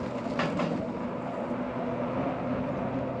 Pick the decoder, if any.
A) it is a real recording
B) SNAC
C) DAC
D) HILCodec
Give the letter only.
A